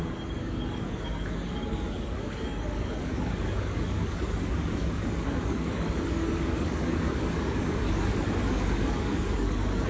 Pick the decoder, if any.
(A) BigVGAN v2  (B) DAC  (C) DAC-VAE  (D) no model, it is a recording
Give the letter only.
B